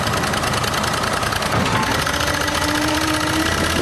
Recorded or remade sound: recorded